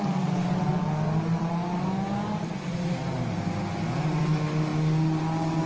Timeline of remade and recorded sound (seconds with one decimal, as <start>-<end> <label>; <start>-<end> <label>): 0.0-5.7 recorded